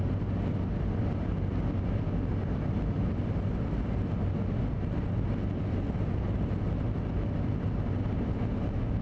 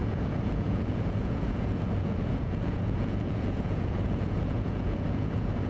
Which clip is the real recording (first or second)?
first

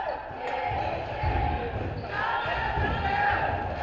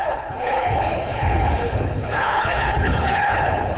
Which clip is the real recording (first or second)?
first